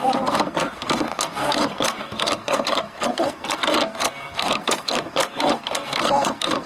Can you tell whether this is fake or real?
fake